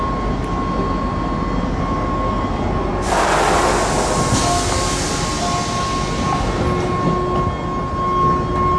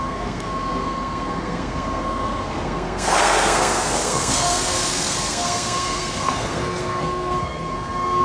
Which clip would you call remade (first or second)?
second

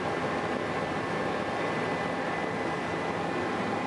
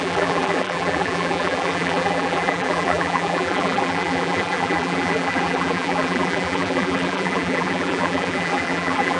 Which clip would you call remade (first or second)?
second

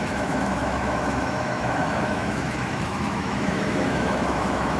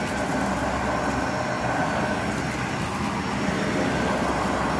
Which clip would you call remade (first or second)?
first